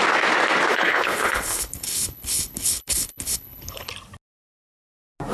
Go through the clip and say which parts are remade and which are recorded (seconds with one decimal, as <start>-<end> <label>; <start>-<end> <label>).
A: 0.0-0.7 recorded; 0.7-3.9 remade; 3.9-5.3 recorded